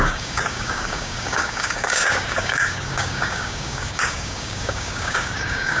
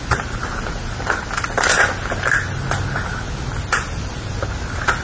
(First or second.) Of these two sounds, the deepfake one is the first